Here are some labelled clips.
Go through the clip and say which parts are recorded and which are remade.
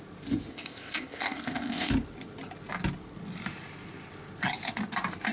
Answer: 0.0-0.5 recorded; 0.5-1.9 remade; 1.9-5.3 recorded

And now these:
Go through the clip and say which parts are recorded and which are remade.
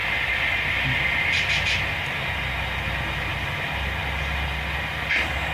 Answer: 0.0-5.5 recorded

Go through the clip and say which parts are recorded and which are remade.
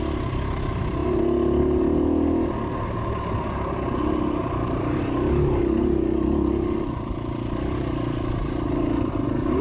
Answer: 0.0-4.4 recorded; 4.4-5.0 remade; 5.0-9.6 recorded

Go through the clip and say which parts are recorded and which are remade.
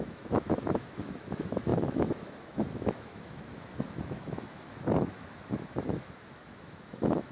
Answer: 0.0-7.3 remade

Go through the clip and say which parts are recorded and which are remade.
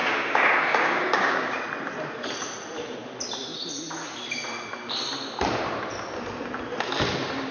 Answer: 0.0-1.6 remade; 1.6-7.5 recorded